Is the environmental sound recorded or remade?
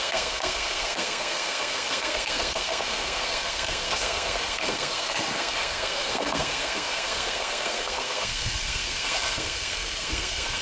remade